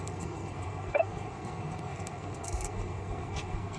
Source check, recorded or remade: remade